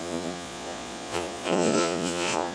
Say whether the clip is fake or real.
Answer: fake